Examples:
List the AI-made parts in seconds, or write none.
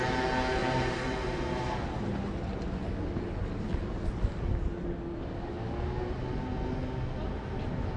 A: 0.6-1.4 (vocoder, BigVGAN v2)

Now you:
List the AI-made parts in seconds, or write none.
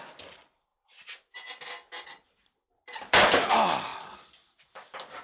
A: none